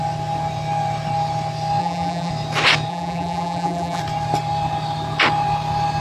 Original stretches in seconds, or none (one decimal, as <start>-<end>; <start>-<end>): 0.0-1.8; 2.3-2.9; 4.0-6.0

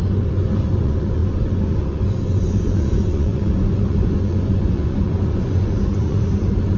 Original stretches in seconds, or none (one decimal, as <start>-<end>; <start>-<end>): none

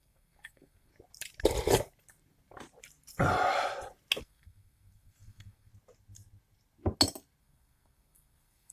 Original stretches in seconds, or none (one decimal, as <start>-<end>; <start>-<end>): 0.9-4.2; 5.7-7.4

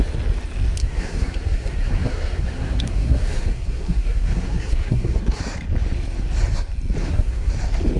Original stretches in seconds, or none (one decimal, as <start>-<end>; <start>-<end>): 0.0-0.8; 5.4-7.0; 7.5-8.0

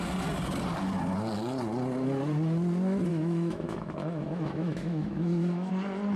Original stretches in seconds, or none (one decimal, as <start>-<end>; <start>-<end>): 0.0-3.1; 5.7-6.2

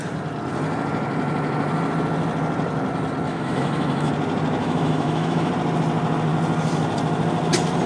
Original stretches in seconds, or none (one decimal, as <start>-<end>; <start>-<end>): 0.0-3.3; 4.1-4.6; 5.5-7.9